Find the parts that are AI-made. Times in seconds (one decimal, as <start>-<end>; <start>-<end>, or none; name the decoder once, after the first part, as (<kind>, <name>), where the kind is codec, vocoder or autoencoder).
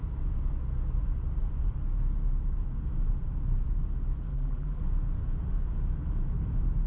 4.3-4.8 (vocoder, BigVGAN v2)